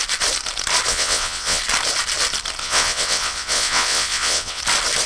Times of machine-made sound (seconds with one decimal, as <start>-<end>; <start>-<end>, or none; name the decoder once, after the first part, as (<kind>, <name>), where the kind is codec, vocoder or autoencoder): 0.9-1.6 (vocoder, WaveNeXt); 2.6-4.6